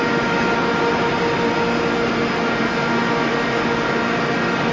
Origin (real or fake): real